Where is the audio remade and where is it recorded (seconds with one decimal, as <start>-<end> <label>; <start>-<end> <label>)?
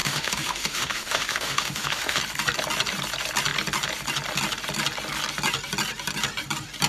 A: 0.0-2.2 remade; 2.2-6.9 recorded